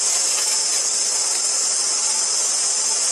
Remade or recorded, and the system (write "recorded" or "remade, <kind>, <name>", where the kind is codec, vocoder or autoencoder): recorded